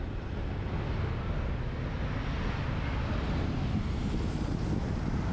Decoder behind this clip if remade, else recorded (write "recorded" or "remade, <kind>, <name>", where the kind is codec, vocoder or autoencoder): recorded